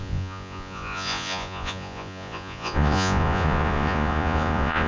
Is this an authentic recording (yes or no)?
no